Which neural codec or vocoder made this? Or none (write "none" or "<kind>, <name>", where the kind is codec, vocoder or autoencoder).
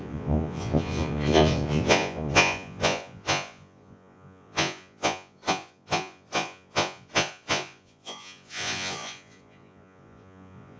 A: vocoder, Vocos